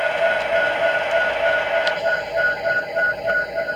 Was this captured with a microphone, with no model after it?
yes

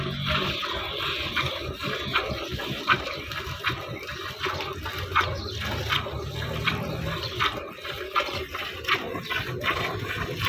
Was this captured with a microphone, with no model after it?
yes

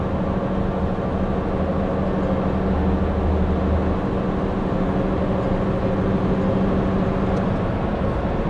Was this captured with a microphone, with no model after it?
yes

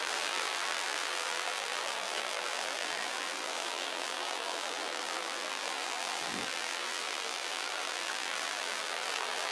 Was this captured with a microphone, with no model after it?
no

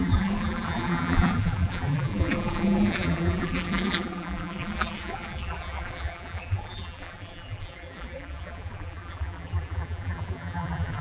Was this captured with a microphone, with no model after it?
no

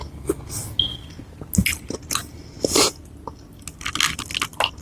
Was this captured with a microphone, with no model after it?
yes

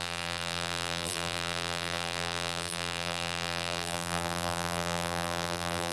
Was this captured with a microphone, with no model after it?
no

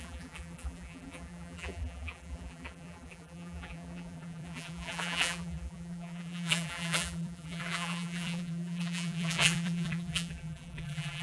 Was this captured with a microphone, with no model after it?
no